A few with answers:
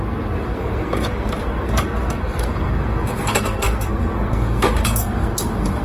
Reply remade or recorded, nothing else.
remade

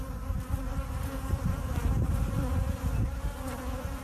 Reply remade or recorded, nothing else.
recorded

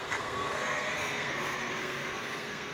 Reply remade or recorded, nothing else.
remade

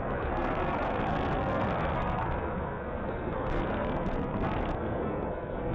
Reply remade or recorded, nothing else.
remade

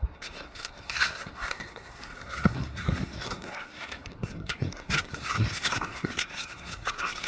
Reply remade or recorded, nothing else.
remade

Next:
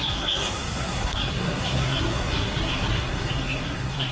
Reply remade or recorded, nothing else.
remade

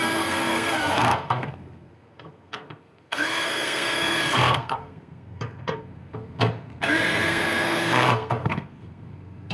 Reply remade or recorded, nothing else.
remade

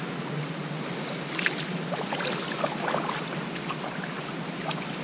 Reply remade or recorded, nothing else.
recorded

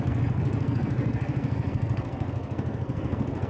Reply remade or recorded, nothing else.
remade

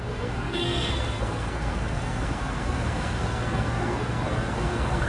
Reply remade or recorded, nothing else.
remade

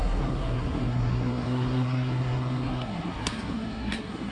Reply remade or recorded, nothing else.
remade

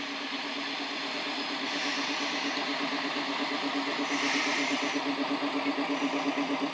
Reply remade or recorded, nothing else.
recorded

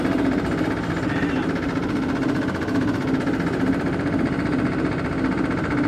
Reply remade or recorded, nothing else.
recorded